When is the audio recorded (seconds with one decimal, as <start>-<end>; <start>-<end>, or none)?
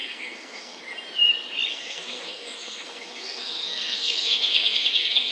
0.8-1.7